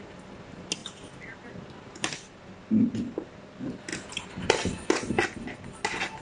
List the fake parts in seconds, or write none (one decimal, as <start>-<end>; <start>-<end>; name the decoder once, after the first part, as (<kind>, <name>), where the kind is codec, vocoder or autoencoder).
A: none